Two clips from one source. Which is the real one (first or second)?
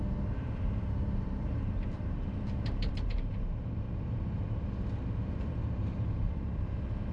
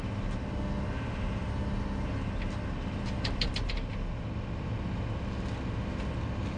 second